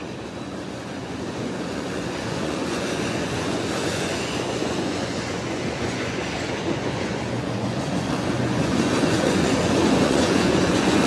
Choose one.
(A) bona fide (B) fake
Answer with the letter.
B